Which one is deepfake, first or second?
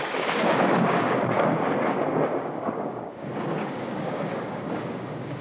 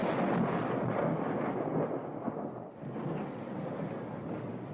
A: first